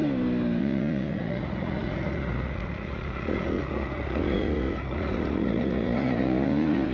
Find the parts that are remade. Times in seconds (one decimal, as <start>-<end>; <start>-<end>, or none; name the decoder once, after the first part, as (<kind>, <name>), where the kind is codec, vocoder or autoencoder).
0.6-6.9 (vocoder, Vocos)